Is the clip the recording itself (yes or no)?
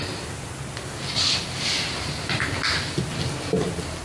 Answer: yes